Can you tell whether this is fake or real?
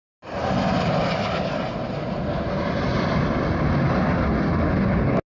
real